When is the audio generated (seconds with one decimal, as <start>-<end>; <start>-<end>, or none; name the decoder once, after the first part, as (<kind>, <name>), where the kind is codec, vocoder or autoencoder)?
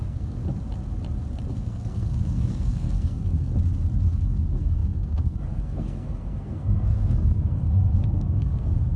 0.0-0.4 (codec, SNAC); 1.5-3.5; 4.1-9.0